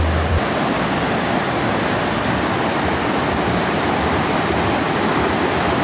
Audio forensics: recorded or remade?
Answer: recorded